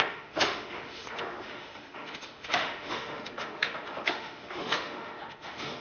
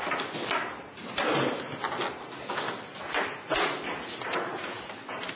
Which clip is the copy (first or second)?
first